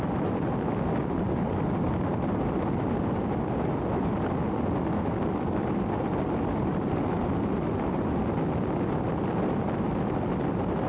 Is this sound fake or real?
real